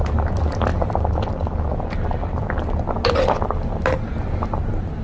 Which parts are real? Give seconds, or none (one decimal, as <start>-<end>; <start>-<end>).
0.0-5.0

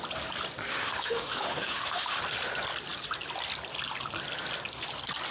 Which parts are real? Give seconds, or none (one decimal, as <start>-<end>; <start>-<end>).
0.0-0.7; 2.2-5.3

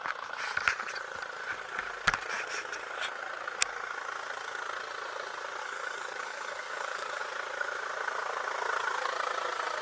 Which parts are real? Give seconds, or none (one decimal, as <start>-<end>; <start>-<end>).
0.0-5.6; 7.2-9.8

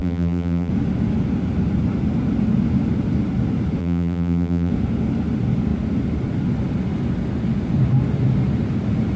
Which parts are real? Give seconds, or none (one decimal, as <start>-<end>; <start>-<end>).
0.7-3.8; 4.7-9.2

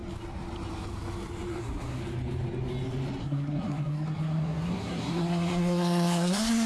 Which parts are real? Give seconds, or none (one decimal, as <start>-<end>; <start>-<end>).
0.0-1.6; 2.0-3.2

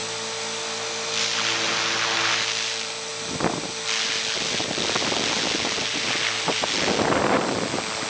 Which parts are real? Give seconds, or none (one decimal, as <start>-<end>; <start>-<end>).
0.0-8.1

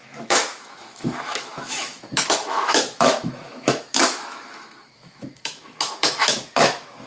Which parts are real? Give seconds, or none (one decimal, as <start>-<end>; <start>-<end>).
none